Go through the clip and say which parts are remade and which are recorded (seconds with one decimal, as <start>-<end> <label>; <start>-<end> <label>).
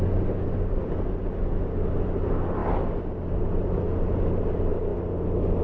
0.0-5.6 recorded